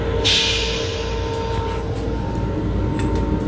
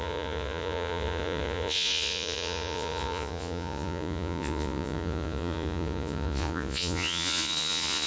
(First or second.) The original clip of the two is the first